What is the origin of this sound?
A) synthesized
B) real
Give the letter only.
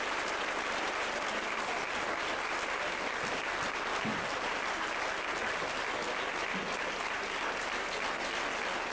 B